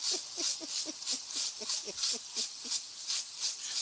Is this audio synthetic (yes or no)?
no